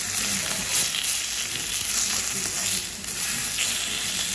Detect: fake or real real